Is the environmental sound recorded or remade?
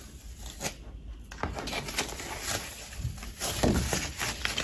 recorded